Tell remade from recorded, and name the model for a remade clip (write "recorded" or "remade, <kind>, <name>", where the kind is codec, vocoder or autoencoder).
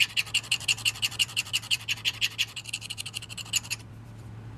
remade, vocoder, BigVGAN v2